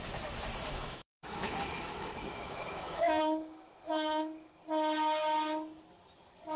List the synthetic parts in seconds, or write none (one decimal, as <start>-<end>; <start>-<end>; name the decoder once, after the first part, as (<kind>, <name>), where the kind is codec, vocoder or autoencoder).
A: 0.5-4.5 (autoencoder, DAC-VAE)